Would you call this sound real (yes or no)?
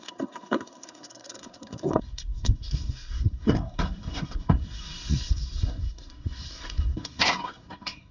no